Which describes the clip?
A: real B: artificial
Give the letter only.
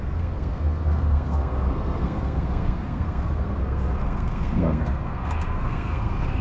B